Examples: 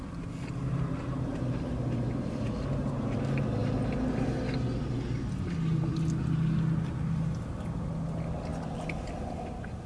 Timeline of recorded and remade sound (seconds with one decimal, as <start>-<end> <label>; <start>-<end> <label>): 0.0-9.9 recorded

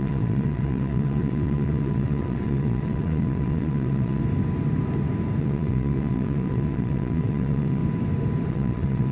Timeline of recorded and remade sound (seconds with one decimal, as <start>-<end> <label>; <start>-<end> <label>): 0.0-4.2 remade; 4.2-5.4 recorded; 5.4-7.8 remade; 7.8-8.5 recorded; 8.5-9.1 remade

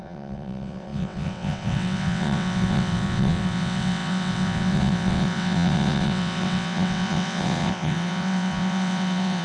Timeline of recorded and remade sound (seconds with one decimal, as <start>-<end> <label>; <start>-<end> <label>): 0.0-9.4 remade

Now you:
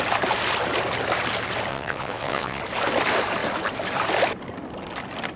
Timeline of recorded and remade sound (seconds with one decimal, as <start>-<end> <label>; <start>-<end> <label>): 0.0-1.7 recorded; 1.7-2.6 remade; 2.6-5.4 recorded

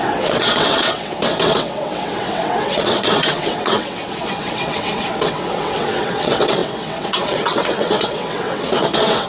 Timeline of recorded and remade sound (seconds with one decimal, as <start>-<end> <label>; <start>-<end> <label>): 0.0-9.3 remade

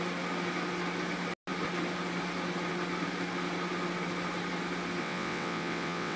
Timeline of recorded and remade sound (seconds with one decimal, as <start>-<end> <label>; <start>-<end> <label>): 0.0-5.0 recorded; 5.0-6.2 remade

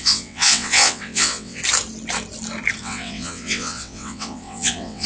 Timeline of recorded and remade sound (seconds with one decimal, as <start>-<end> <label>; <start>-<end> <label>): 0.0-1.6 remade; 1.6-2.8 recorded; 2.8-5.1 remade

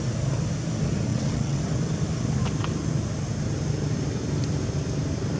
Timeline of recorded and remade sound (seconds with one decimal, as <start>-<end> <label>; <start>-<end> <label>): 0.0-1.1 recorded; 1.1-1.6 remade; 1.6-5.4 recorded